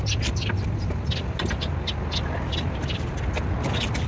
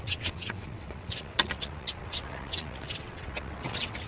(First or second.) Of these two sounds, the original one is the first